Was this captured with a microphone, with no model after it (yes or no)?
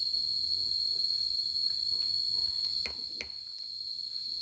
yes